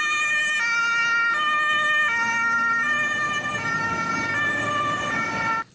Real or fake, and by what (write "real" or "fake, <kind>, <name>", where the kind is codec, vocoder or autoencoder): real